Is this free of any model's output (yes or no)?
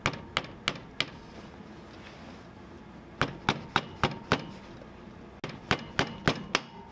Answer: yes